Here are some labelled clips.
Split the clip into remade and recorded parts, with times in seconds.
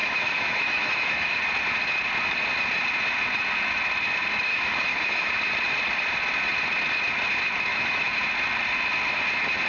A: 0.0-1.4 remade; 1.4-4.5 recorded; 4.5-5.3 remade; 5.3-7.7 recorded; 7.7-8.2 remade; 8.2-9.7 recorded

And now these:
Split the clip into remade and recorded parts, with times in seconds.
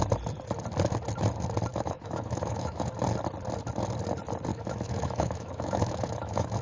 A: 0.0-1.7 recorded; 1.7-2.9 remade; 2.9-4.5 recorded; 4.5-6.6 remade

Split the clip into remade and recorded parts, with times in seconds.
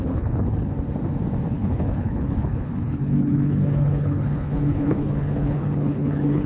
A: 0.0-0.7 remade; 0.7-1.5 recorded; 1.5-6.5 remade